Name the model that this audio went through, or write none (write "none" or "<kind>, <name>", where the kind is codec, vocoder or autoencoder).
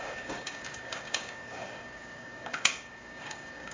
codec, DAC